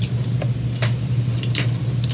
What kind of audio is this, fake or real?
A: real